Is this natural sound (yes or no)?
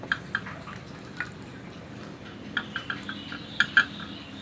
yes